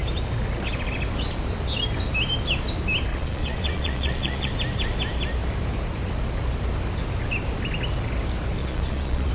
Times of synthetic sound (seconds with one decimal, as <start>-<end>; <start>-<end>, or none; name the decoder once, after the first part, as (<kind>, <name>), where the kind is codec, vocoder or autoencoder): 3.1-4.5 (vocoder, Vocos); 8.6-9.3